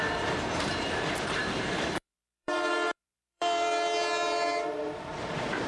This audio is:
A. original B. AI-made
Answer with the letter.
B